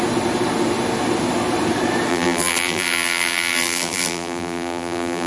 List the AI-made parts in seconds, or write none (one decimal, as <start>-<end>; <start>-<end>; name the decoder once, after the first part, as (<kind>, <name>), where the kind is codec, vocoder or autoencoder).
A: 2.1-5.3 (vocoder, BigVGAN v2)